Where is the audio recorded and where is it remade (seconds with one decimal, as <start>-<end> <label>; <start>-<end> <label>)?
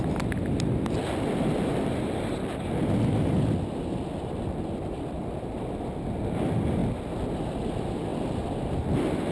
0.0-9.3 recorded